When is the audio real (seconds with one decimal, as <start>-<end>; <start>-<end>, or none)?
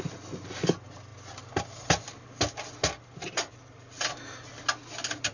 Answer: 0.0-5.3